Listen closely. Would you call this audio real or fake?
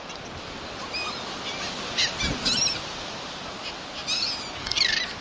real